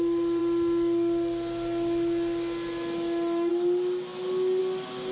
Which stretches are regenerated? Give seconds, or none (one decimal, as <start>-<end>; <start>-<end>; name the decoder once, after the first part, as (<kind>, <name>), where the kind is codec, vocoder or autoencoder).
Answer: none